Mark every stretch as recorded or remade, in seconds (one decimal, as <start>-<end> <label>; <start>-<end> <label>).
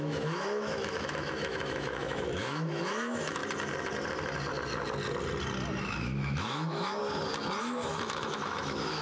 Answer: 0.0-3.4 remade; 3.4-5.8 recorded; 5.8-7.0 remade; 7.0-7.6 recorded; 7.6-9.0 remade